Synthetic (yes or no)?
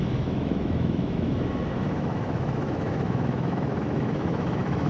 yes